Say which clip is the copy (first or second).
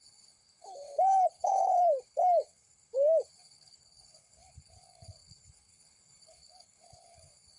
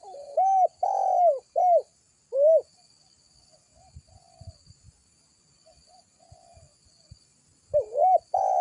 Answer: first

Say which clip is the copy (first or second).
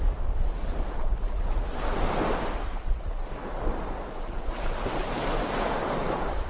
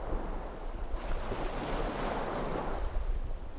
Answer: second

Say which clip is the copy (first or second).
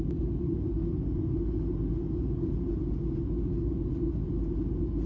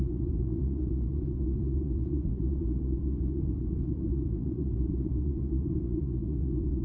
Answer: second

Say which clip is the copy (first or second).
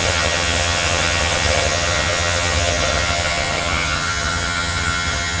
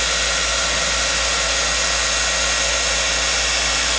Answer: first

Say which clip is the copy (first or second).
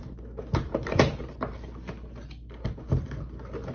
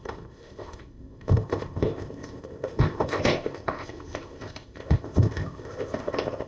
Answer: second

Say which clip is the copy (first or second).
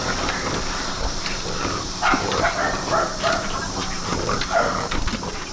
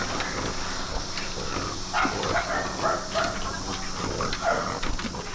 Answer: first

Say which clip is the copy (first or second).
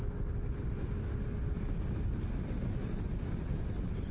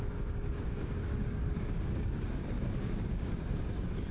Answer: second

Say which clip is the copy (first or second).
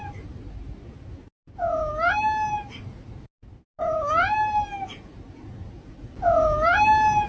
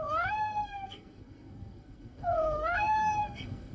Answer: second